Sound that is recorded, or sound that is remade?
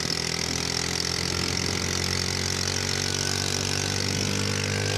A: recorded